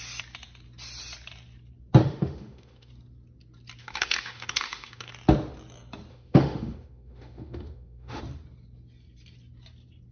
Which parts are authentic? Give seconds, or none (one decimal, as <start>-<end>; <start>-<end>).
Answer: 0.0-2.0; 2.9-3.8; 5.1-6.1; 8.2-10.1